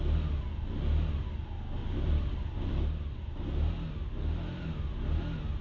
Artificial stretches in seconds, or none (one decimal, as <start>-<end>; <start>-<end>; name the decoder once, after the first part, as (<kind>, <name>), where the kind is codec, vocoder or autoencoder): 1.8-3.2 (vocoder, BigVGAN v2)